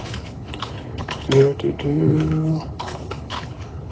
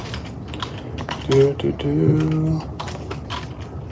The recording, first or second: second